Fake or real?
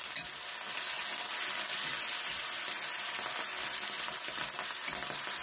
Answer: real